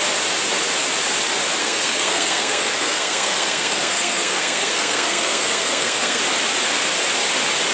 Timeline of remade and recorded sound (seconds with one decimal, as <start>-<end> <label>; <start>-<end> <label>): 0.0-1.6 recorded; 1.6-6.2 remade; 6.2-7.7 recorded